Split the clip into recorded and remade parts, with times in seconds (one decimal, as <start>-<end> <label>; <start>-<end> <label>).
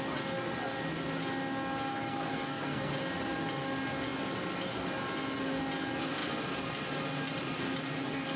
0.0-1.9 recorded; 1.9-2.9 remade; 2.9-8.4 recorded